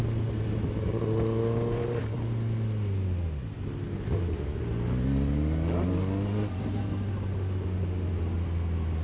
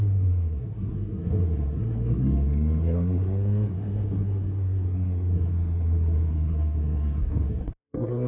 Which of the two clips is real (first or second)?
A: first